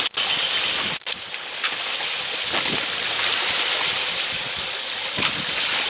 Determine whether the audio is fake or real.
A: real